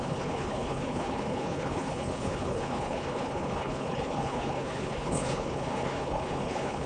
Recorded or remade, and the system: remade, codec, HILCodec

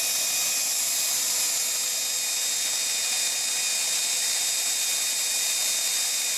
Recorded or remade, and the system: recorded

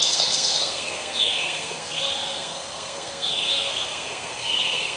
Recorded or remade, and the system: remade, codec, SNAC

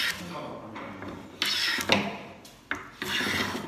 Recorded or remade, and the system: recorded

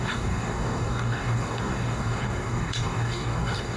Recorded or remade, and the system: remade, codec, DAC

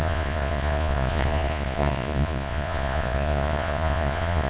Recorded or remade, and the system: remade, vocoder, Vocos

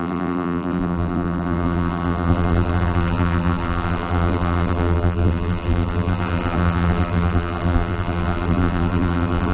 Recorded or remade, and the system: remade, vocoder, BigVGAN v2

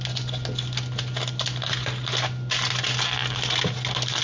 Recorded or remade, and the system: recorded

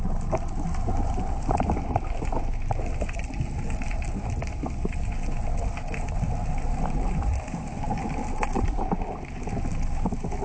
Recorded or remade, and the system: recorded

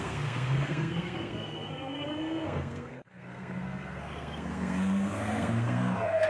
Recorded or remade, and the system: remade, codec, SNAC